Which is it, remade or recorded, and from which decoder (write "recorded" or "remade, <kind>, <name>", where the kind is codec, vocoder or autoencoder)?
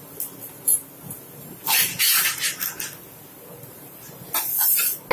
recorded